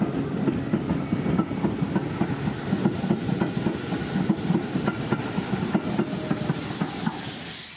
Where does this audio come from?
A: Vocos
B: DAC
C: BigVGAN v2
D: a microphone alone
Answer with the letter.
D